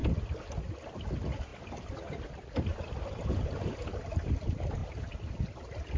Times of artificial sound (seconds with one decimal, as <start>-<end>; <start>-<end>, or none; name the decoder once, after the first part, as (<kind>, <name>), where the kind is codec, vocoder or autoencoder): 1.5-2.3 (vocoder, BigVGAN v2); 2.7-4.0; 4.8-5.3